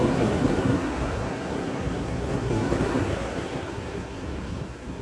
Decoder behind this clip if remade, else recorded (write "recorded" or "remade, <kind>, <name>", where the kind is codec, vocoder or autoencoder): remade, codec, SNAC